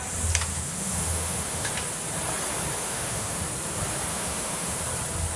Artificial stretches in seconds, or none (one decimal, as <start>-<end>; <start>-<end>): 0.5-1.7; 2.8-3.4; 4.1-4.8